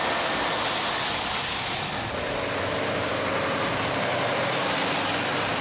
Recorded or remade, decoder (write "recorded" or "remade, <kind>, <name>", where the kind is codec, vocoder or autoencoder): recorded